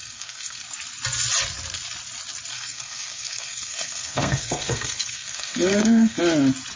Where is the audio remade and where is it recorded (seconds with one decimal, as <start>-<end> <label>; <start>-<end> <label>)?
0.0-0.6 remade; 0.6-2.5 recorded; 2.5-6.2 remade; 6.2-6.8 recorded